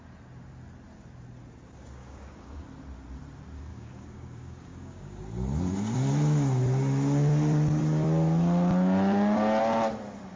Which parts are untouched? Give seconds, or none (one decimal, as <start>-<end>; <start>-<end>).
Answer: 0.0-2.0; 2.6-3.7; 5.2-10.4